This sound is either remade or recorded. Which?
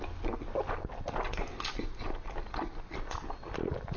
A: recorded